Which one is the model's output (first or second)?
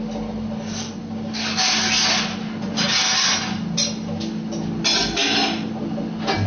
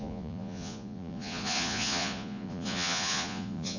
second